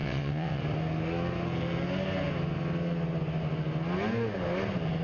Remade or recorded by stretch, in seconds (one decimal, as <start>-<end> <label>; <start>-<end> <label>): 0.0-0.6 remade; 0.6-5.0 recorded